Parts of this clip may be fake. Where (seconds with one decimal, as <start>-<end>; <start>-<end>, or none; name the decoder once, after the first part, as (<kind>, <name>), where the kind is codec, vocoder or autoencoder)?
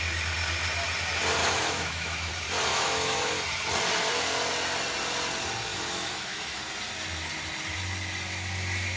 1.4-2.3 (autoencoder, DAC-VAE); 2.7-3.3; 5.7-6.6